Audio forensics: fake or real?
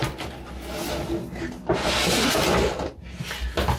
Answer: real